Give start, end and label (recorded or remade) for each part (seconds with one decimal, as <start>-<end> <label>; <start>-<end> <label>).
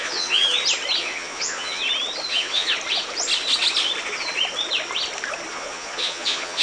0.0-0.4 remade; 0.4-1.0 recorded; 1.0-1.8 remade; 1.8-2.3 recorded; 2.3-2.7 remade; 2.7-5.5 recorded; 5.5-6.6 remade